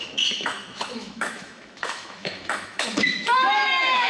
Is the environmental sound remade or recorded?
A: remade